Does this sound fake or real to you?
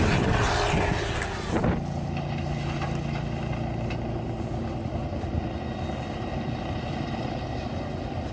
real